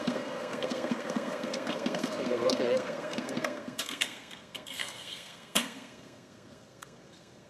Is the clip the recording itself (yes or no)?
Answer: no